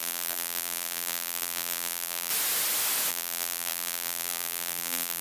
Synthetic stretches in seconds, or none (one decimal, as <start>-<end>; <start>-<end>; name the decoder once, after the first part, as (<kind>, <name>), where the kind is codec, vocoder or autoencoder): 0.0-2.3 (vocoder, BigVGAN v2); 3.1-5.2